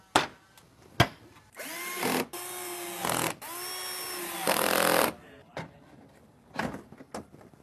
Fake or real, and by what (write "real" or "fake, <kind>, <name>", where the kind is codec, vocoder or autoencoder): real